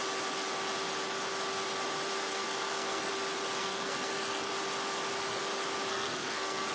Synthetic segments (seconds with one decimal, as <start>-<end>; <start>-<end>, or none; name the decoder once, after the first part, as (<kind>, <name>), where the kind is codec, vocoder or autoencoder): 2.3-3.1 (codec, SNAC); 3.6-4.5; 5.9-6.7